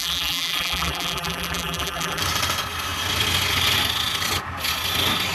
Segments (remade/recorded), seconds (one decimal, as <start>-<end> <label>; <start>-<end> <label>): 0.0-2.2 remade; 2.2-5.3 recorded